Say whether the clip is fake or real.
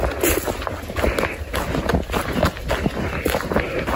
real